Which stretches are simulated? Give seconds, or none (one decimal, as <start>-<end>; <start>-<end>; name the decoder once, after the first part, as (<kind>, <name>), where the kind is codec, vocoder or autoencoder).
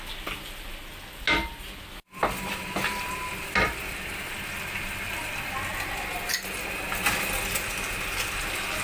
none